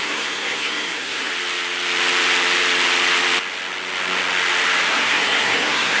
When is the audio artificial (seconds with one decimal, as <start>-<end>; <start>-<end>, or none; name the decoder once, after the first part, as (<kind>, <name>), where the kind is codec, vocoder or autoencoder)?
0.0-1.3 (codec, SNAC); 4.9-6.0